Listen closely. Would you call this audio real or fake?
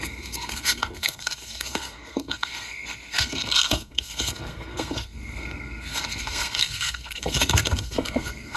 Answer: fake